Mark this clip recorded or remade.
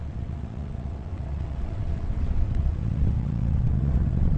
remade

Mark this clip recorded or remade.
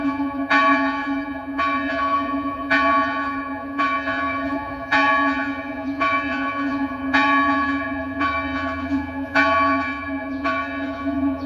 remade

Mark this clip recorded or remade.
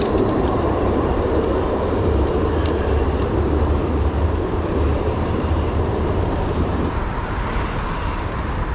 remade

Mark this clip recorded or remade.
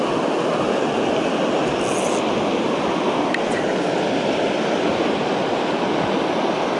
recorded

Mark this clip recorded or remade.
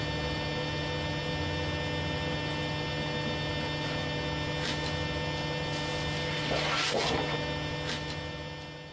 recorded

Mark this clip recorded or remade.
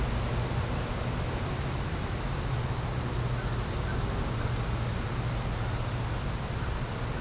recorded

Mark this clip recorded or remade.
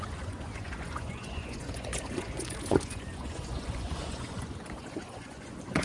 remade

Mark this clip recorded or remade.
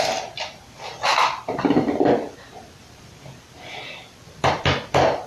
recorded